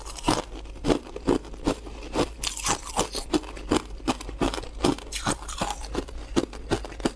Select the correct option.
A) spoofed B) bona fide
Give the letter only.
B